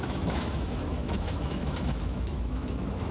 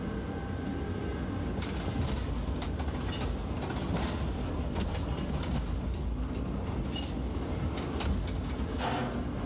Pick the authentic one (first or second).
second